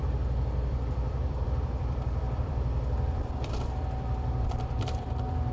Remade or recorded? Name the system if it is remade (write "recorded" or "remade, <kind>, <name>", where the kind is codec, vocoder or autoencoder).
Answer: remade, vocoder, BigVGAN v2